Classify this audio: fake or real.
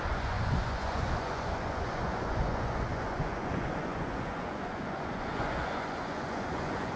fake